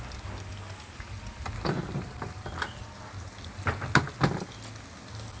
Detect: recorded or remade recorded